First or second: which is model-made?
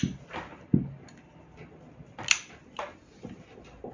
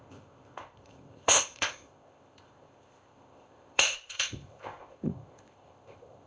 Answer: second